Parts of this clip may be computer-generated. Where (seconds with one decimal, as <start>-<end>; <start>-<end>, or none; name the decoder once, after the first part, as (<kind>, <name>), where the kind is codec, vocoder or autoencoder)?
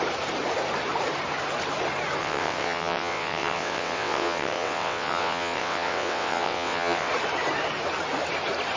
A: 2.2-7.1 (vocoder, WaveNeXt)